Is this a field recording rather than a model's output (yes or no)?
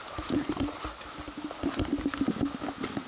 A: yes